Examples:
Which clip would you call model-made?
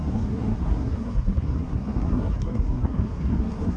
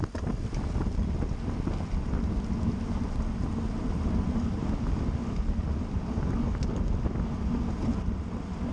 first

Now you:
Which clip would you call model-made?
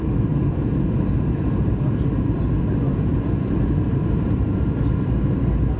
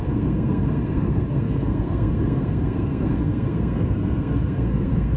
second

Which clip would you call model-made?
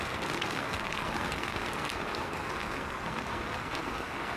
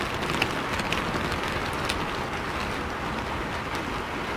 first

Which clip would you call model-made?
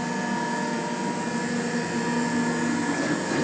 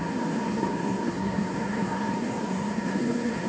second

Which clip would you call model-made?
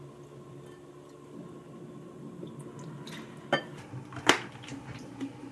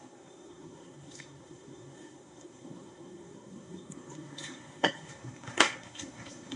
second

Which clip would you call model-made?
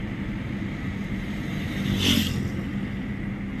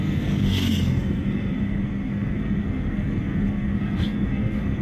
second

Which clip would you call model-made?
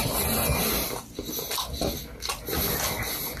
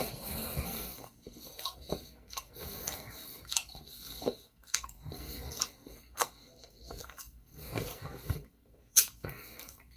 second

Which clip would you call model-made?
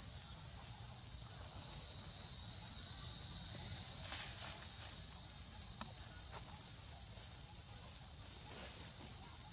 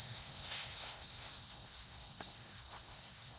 second